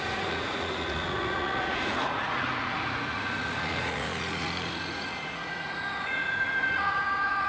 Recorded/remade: remade